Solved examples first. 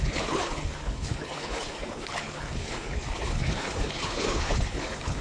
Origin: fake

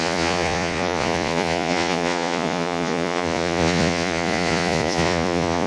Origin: fake